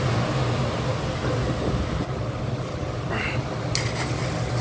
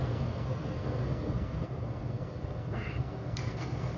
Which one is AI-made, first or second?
second